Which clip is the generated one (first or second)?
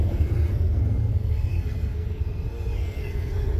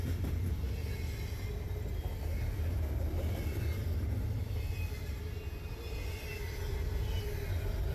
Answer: first